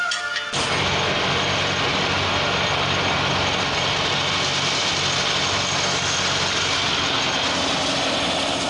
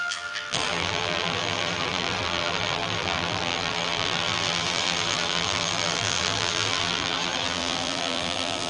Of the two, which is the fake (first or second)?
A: second